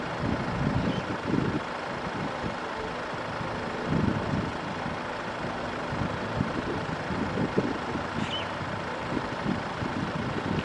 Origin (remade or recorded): recorded